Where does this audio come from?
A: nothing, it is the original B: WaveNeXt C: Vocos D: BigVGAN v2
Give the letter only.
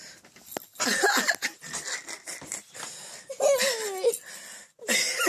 A